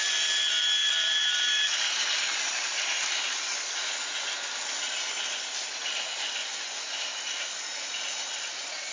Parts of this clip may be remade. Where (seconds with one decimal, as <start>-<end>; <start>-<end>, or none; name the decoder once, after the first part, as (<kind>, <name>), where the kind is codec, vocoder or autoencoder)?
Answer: 6.4-7.0 (vocoder, Vocos)